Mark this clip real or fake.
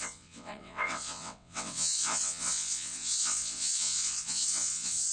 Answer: fake